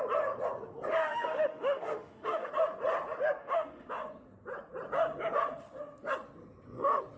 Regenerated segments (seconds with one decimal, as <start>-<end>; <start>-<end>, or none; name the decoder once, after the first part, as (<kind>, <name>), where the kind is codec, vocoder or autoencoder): 1.0-2.5 (autoencoder, DAC-VAE); 3.4-3.9